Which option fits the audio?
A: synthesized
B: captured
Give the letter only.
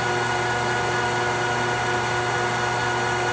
B